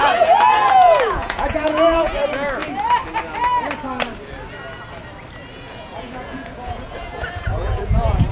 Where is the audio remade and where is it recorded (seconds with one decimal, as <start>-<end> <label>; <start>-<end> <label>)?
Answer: 0.0-2.6 remade; 2.6-5.6 recorded; 5.6-8.3 remade